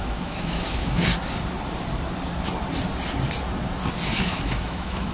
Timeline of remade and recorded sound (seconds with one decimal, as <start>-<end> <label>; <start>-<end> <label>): 0.0-1.1 remade; 1.1-4.2 recorded; 4.2-5.1 remade